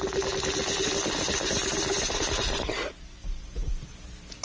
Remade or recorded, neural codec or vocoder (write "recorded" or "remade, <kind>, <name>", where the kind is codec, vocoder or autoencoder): recorded